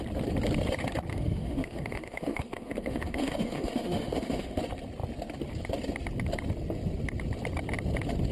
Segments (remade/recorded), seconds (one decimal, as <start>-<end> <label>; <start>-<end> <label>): 0.0-1.1 recorded; 1.1-4.6 remade; 4.6-8.3 recorded